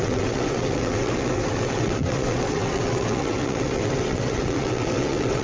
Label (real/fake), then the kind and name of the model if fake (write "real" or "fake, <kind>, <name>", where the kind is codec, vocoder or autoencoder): fake, vocoder, WaveNeXt